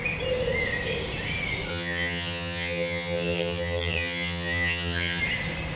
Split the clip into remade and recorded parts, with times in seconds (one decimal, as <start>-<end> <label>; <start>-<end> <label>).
0.0-1.7 recorded; 1.7-5.2 remade; 5.2-5.8 recorded